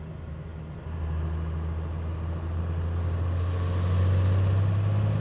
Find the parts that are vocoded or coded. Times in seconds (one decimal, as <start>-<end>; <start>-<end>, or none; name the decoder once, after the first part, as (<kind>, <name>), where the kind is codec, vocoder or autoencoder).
none